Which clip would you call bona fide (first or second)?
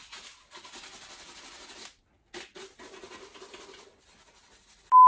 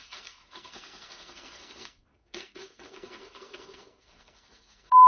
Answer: first